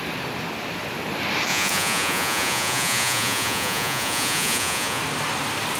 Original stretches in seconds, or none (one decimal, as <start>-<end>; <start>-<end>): 0.0-1.5; 5.0-5.8